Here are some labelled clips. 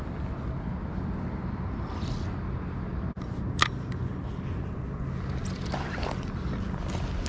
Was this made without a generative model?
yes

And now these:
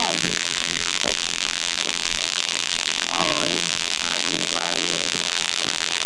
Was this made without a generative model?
no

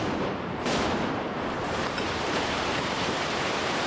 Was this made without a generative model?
no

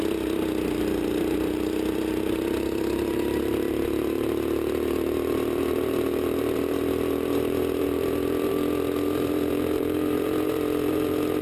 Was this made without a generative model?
no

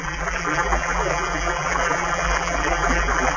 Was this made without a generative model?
no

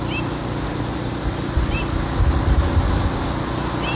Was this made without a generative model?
yes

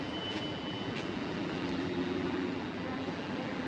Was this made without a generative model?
no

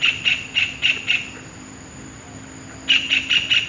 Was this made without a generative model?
yes